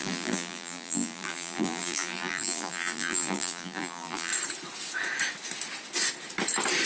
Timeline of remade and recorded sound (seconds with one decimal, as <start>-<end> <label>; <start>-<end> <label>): 0.0-4.3 remade; 4.3-6.9 recorded